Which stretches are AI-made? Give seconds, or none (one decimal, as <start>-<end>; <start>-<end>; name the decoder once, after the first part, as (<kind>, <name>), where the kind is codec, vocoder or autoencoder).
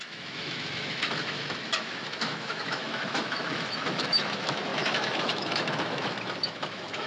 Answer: 0.0-7.1 (autoencoder, DAC-VAE)